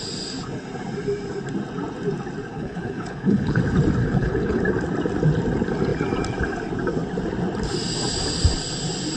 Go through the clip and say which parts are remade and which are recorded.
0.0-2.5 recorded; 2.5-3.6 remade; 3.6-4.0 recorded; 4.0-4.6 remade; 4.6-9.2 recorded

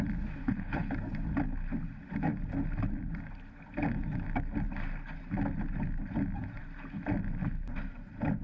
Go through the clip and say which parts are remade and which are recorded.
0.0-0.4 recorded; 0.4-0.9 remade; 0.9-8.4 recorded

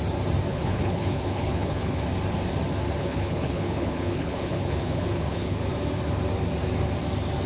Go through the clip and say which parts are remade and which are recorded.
0.0-0.5 recorded; 0.5-2.0 remade; 2.0-3.0 recorded; 3.0-5.7 remade; 5.7-7.5 recorded

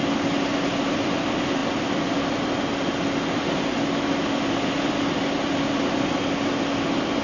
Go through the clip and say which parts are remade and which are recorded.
0.0-7.2 recorded

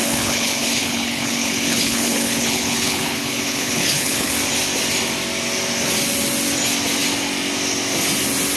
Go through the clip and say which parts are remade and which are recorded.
0.0-4.3 remade; 4.3-8.6 recorded

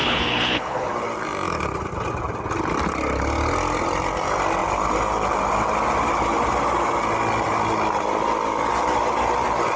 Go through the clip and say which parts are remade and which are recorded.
0.0-0.9 remade; 0.9-9.8 recorded

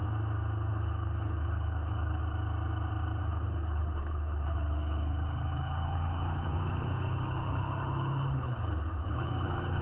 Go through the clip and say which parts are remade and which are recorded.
0.0-0.7 recorded; 0.7-2.2 remade; 2.2-3.2 recorded; 3.2-9.8 remade

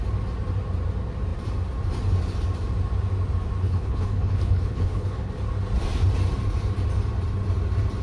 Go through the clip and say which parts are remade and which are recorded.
0.0-3.6 recorded; 3.6-5.3 remade; 5.3-8.0 recorded